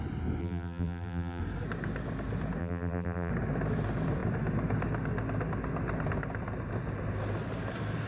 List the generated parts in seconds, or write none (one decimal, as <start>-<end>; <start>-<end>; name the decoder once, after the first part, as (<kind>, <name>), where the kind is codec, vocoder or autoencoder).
0.4-1.4 (vocoder, BigVGAN v2); 2.6-3.3